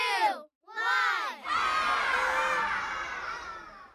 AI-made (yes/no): no